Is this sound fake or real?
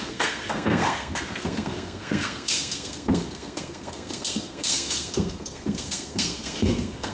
fake